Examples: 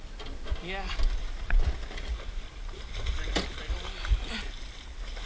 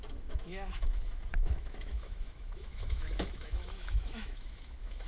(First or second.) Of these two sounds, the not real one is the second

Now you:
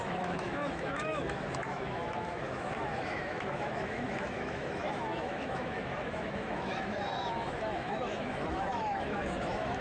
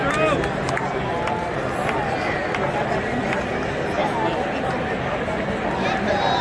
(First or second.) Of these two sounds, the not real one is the first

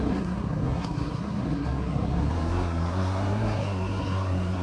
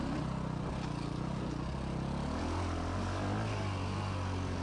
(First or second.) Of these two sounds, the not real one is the first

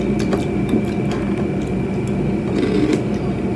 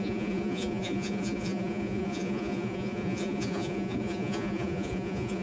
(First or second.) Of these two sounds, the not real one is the second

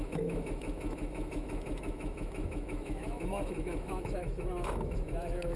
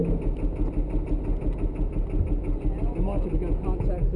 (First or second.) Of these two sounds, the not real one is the first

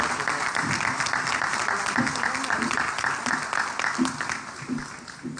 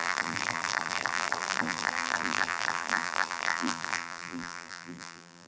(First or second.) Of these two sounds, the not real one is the second